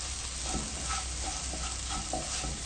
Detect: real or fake real